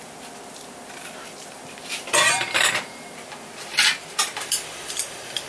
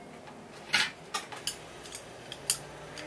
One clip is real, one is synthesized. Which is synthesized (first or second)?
first